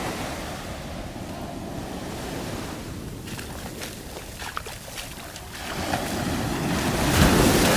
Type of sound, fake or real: real